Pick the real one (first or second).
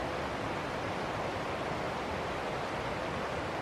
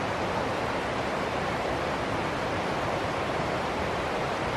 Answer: first